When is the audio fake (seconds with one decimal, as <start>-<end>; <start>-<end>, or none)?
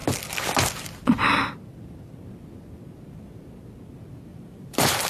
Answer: 4.3-5.1